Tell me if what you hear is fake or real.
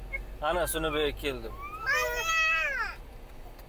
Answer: real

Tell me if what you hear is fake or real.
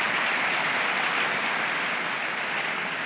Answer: real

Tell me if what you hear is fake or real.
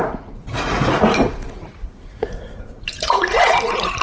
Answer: fake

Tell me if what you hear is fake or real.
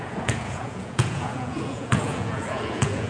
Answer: fake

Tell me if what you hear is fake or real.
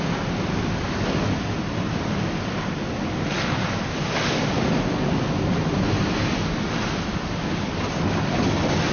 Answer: real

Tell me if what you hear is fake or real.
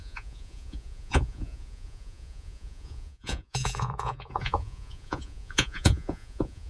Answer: fake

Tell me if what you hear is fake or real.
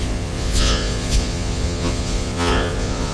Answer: fake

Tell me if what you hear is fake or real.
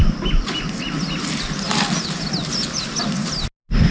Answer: real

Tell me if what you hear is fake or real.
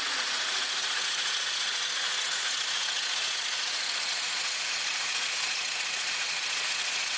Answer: fake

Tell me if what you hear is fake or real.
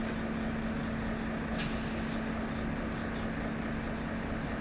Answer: real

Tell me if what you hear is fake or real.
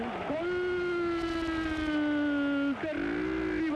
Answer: real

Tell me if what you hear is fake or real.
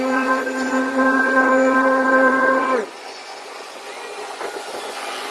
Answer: fake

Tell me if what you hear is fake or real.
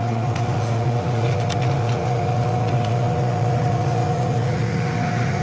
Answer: fake